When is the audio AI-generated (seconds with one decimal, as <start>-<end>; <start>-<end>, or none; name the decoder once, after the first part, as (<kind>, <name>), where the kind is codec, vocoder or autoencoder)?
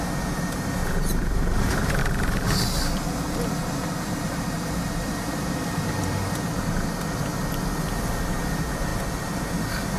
0.8-2.0 (vocoder, BigVGAN v2); 3.6-6.2